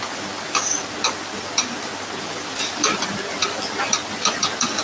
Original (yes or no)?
yes